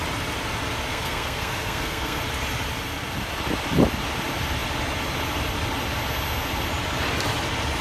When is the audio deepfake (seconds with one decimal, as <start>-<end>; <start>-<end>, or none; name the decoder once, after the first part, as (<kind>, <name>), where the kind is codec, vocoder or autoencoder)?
0.9-2.2 (codec, SNAC)